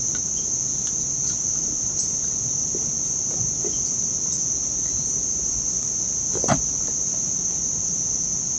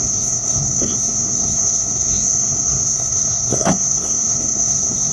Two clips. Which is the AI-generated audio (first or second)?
second